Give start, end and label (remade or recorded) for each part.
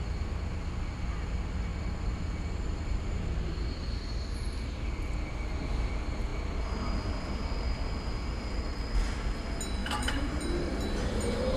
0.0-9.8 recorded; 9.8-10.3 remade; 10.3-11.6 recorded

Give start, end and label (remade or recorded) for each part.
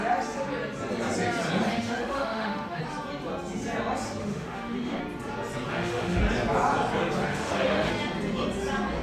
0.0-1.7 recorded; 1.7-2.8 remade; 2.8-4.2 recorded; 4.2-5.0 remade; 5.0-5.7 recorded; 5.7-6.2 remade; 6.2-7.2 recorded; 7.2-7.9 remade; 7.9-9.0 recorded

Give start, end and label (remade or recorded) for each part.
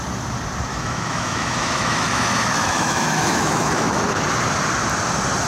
0.0-0.7 recorded; 0.7-4.0 remade; 4.0-5.5 recorded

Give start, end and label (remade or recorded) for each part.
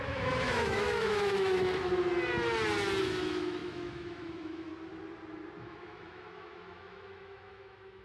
0.0-1.9 remade; 1.9-3.0 recorded; 3.0-4.7 remade; 4.7-5.6 recorded; 5.6-8.0 remade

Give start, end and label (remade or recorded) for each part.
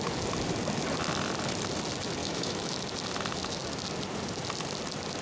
0.0-2.2 recorded; 2.2-2.8 remade; 2.8-5.2 recorded